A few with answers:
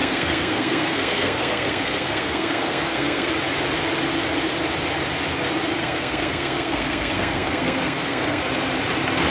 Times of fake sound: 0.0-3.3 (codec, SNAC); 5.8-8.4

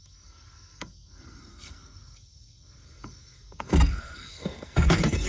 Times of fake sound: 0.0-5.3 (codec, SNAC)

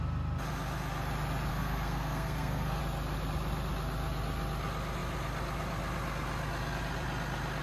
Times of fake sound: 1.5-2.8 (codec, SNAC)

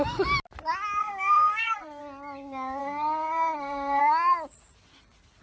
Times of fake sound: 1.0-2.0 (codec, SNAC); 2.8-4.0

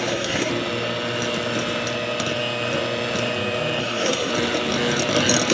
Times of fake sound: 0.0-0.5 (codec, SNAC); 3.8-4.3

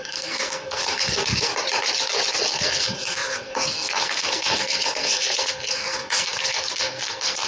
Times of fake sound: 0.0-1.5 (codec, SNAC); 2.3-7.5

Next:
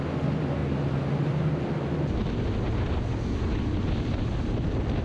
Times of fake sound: none

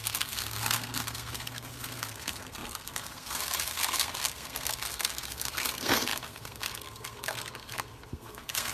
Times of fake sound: 0.0-8.7 (codec, SNAC)